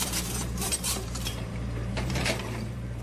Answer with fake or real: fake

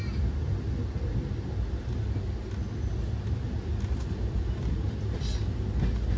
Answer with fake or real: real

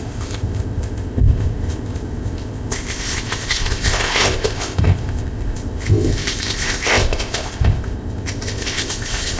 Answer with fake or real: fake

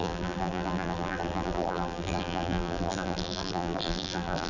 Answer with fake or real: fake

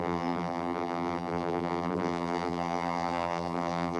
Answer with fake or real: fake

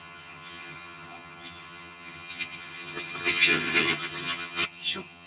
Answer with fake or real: fake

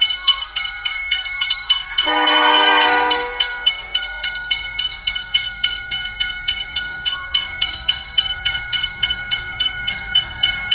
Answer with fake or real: fake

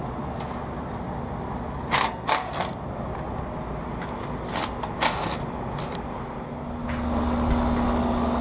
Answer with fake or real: real